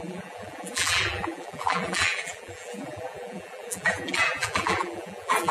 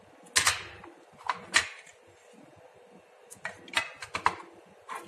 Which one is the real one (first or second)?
second